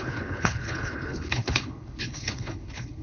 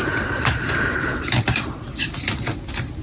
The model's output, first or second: first